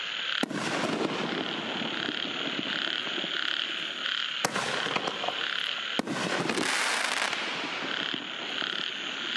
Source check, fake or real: real